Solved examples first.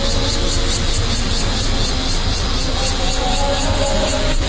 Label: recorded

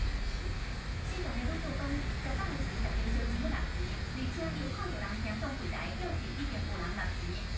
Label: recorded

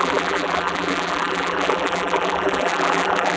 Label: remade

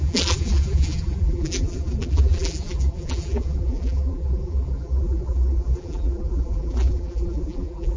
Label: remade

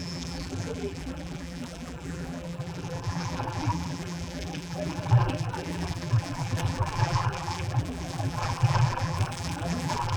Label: remade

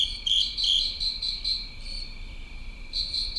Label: remade